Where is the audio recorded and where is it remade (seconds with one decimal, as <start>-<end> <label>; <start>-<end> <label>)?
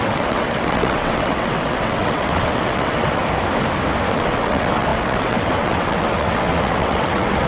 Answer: 0.0-3.2 remade; 3.2-4.1 recorded; 4.1-7.5 remade